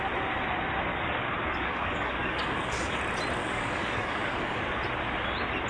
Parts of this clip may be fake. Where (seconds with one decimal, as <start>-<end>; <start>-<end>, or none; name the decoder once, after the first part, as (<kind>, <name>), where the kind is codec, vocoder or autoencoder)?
0.9-3.0 (codec, DAC); 3.4-4.6